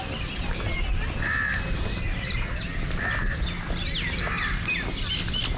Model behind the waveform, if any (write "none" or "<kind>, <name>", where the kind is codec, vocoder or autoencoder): none